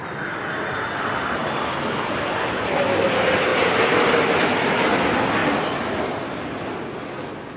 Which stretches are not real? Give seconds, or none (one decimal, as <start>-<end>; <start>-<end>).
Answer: none

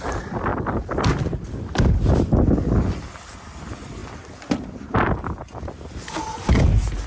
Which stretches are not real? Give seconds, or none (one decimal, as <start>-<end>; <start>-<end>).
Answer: none

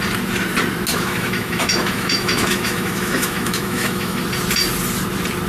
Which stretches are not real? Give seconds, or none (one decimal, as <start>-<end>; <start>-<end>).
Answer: 0.9-4.2